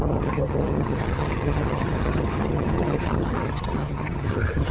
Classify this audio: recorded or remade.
remade